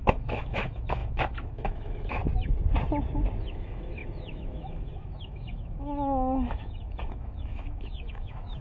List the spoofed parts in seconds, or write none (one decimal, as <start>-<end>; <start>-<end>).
0.0-2.2; 3.4-8.6